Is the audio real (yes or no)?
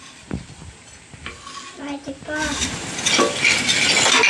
yes